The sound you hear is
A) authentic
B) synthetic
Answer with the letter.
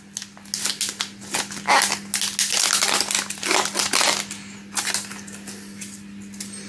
A